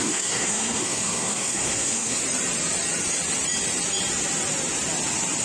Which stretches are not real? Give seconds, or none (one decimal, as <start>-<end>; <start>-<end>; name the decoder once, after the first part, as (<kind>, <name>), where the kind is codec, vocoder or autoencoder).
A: 0.0-2.2 (codec, SNAC)